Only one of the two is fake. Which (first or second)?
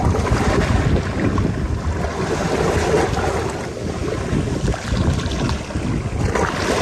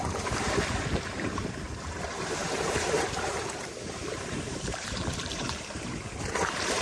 second